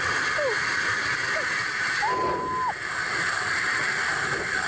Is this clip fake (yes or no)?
no